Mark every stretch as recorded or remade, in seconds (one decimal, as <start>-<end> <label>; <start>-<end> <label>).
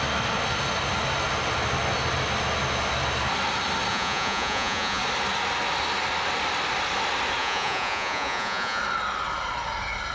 0.0-3.9 recorded; 3.9-5.0 remade; 5.0-7.4 recorded; 7.4-8.8 remade; 8.8-10.1 recorded